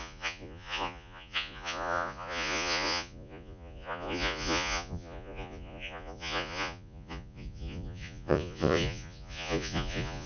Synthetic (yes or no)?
yes